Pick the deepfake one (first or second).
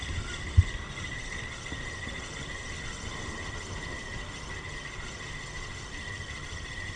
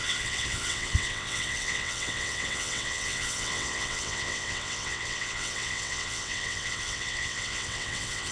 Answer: second